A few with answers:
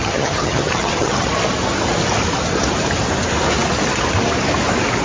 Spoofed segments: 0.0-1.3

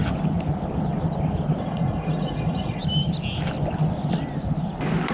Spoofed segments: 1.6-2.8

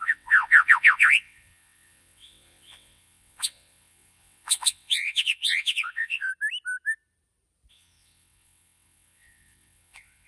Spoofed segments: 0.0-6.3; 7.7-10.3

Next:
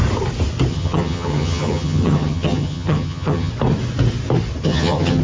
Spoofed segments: 0.7-3.5; 4.6-5.2

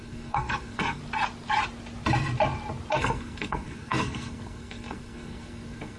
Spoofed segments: 0.0-1.0; 2.9-6.0

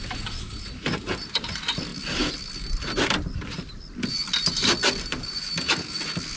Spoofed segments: none